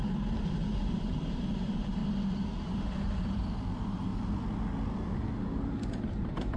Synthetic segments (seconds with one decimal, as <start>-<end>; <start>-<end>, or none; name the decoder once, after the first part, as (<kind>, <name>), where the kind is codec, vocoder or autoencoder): 0.0-2.0 (vocoder, BigVGAN v2); 2.6-4.1; 6.1-6.6

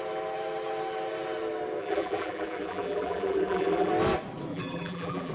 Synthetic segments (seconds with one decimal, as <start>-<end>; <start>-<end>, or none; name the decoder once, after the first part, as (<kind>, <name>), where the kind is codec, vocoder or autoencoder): 1.8-3.9 (vocoder, BigVGAN v2); 4.5-5.3

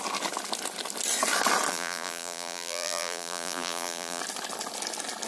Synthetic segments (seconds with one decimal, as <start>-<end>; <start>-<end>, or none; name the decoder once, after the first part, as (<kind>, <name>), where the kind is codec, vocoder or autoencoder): 1.7-4.2 (vocoder, BigVGAN v2)